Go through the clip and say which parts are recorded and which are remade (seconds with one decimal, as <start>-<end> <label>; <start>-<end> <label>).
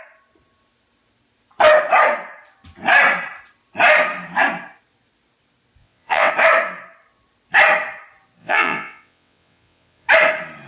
0.0-5.8 recorded; 5.8-6.3 remade; 6.3-8.4 recorded; 8.4-10.1 remade; 10.1-10.7 recorded